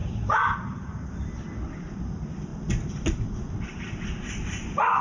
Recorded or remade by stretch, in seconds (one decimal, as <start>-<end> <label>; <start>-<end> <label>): 0.0-2.0 remade; 2.0-5.0 recorded